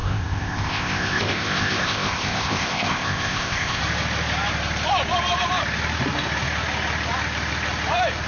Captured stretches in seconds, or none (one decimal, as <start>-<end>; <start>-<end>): 3.8-8.3